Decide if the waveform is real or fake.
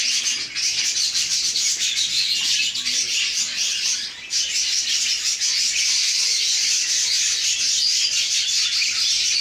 real